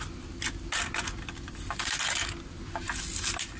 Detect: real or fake real